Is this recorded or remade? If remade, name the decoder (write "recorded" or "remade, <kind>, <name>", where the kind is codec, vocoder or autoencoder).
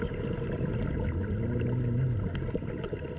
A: recorded